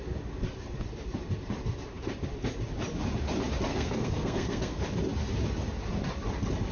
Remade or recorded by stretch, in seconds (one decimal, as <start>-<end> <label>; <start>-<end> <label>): 0.0-3.7 recorded; 3.7-4.8 remade; 4.8-6.7 recorded